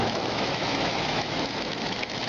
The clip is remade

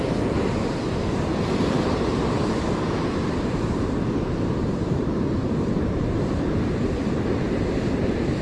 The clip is remade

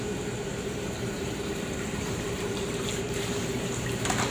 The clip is remade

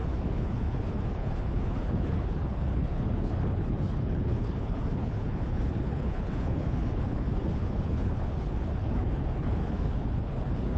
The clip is remade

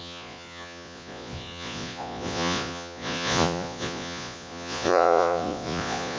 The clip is remade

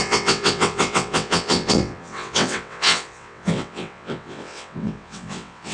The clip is remade